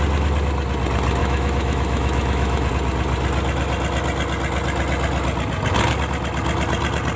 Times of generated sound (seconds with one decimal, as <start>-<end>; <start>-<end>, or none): 1.2-2.7